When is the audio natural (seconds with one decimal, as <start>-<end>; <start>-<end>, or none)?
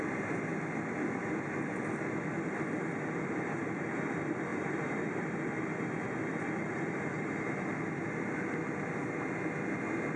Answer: 0.0-4.5; 5.8-10.2